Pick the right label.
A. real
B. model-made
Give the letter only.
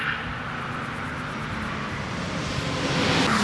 A